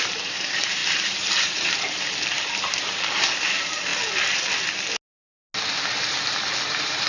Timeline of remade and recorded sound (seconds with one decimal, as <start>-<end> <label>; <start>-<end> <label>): 0.0-3.9 remade; 3.9-5.9 recorded; 5.9-7.1 remade